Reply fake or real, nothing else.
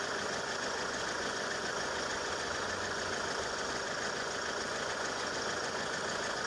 fake